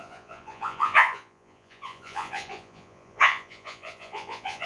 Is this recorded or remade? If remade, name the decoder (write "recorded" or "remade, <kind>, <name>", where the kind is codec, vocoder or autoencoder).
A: remade, vocoder, Vocos